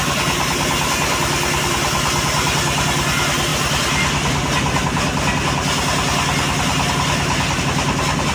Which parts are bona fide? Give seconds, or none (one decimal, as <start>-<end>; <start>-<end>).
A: 0.0-8.3